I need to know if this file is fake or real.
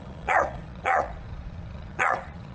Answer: fake